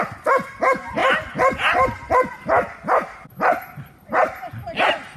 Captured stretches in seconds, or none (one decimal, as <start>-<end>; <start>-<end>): 0.0-5.2

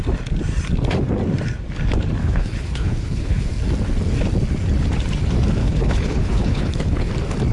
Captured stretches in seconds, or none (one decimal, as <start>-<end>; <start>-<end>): 0.0-2.2; 3.5-5.6; 7.1-7.5

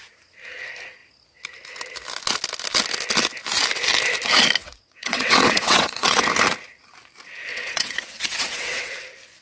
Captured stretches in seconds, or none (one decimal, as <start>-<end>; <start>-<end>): 0.0-4.6; 6.2-7.5; 8.9-9.4

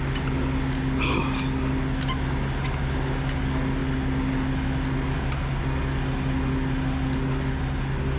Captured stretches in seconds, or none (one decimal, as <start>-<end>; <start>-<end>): 0.0-8.2